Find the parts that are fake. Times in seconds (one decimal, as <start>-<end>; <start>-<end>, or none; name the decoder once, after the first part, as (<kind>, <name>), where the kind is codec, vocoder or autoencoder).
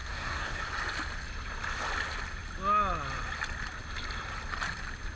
0.0-0.6 (codec, SNAC)